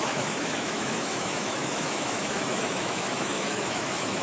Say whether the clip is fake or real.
fake